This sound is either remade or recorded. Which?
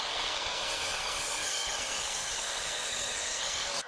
remade